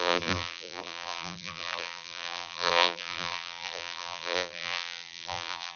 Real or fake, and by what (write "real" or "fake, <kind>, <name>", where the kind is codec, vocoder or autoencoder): fake, vocoder, BigVGAN v2